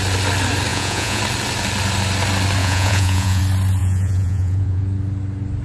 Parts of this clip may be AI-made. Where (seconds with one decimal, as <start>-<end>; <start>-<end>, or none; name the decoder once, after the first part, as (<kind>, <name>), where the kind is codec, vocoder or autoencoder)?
0.7-1.2 (vocoder, Vocos); 2.6-3.4; 3.8-4.8